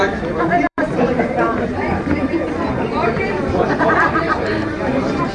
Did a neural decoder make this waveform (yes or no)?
yes